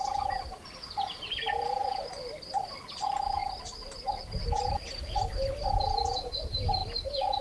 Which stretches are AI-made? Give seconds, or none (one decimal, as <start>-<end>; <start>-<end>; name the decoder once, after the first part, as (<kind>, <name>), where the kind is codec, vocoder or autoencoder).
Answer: none